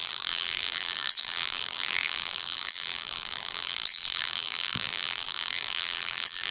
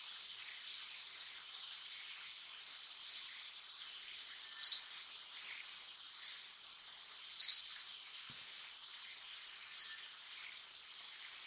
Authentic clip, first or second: second